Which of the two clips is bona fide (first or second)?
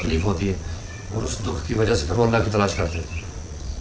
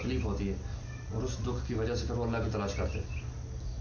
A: second